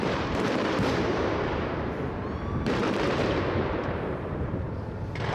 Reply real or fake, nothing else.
fake